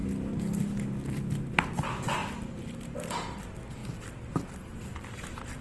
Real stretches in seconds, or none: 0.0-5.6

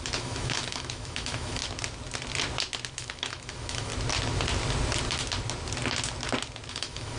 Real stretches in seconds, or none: 1.6-2.9; 3.9-6.7

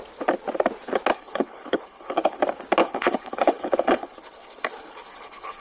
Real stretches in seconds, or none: 0.0-1.1; 2.4-2.8